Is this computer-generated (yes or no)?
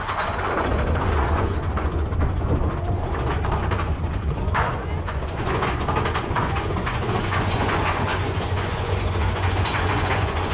yes